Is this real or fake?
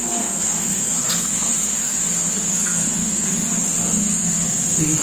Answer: fake